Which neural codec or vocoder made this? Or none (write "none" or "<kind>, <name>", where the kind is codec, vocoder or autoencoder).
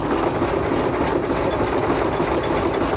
none